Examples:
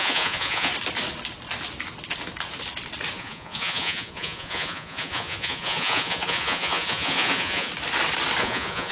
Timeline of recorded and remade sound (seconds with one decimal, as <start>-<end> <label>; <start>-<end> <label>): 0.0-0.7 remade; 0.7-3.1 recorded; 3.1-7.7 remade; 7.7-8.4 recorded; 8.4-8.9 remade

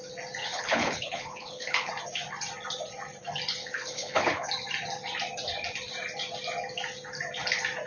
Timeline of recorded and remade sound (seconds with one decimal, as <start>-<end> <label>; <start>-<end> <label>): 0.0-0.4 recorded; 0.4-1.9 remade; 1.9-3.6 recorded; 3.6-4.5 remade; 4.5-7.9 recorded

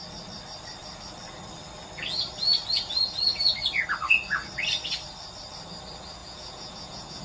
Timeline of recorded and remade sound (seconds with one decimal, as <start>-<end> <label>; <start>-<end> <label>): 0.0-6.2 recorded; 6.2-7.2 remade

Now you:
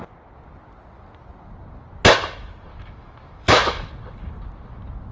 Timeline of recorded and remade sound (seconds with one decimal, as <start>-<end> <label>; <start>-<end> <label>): 0.0-2.7 recorded; 2.7-3.9 remade; 3.9-5.1 recorded

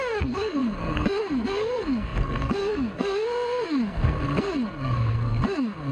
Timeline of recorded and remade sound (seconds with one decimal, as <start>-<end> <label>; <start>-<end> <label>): 0.0-5.9 remade